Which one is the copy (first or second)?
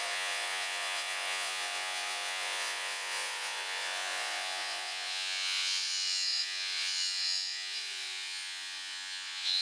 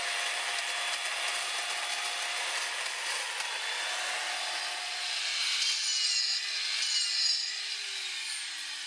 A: first